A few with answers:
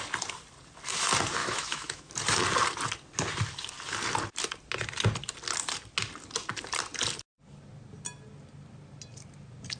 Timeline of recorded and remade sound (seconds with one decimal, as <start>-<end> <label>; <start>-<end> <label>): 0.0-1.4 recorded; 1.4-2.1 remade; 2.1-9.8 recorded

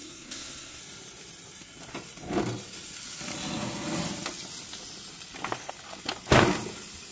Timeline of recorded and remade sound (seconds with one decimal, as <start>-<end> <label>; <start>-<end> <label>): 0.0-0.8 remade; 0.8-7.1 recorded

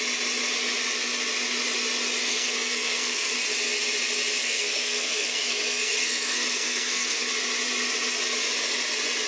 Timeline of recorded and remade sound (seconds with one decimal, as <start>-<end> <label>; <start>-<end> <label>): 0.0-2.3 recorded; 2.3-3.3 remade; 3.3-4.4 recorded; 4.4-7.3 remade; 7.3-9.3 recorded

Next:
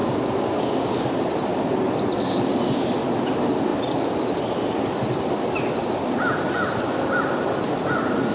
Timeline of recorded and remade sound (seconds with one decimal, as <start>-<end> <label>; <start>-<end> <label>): 0.0-1.1 remade; 1.1-8.3 recorded